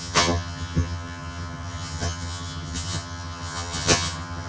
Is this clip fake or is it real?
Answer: fake